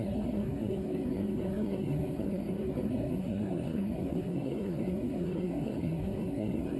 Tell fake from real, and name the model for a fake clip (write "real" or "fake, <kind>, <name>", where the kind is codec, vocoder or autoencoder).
fake, codec, SNAC